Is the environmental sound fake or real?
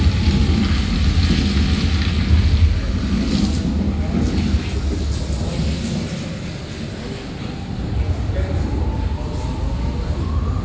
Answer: real